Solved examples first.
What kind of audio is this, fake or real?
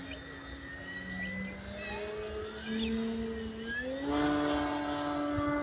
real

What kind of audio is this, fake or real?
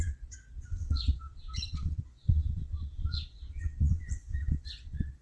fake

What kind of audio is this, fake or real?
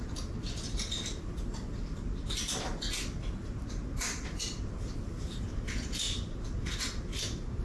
real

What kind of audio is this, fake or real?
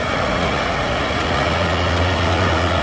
fake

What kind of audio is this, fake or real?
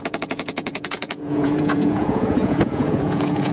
fake